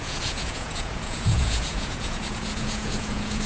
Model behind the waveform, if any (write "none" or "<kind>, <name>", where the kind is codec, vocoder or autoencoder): vocoder, Vocos